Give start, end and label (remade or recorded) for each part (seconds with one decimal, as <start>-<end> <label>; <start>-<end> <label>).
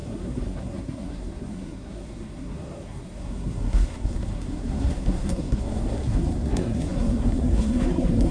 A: 0.0-8.3 remade